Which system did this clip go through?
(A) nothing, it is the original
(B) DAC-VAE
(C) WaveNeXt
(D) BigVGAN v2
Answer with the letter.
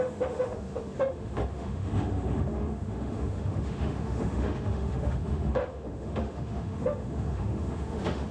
B